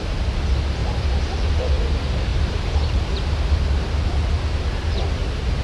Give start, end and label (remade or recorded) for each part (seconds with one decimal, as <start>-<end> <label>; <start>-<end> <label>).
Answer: 0.0-0.8 recorded; 0.8-1.5 remade; 1.5-2.3 recorded; 2.3-3.7 remade; 3.7-5.6 recorded